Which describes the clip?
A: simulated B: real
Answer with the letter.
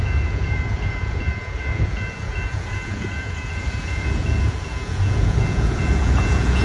A